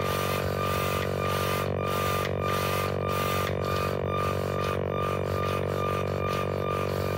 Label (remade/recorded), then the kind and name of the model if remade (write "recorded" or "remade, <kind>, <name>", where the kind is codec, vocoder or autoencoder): recorded